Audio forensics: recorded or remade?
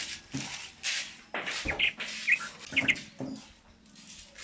recorded